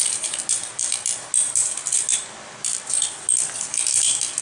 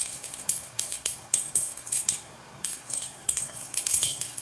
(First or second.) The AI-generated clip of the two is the second